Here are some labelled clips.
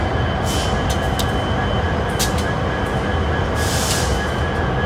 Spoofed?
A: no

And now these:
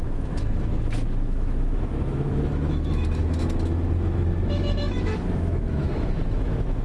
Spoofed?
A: yes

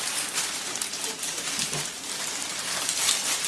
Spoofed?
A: yes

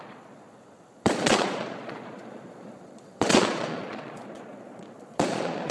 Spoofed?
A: yes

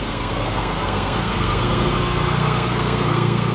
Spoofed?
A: yes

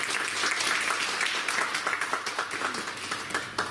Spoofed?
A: no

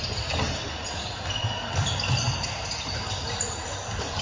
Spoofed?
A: no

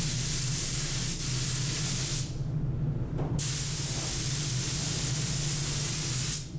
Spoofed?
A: no